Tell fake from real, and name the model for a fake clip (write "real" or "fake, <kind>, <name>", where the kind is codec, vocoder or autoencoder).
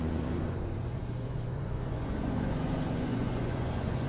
fake, vocoder, Vocos